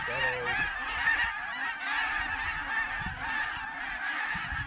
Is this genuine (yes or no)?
yes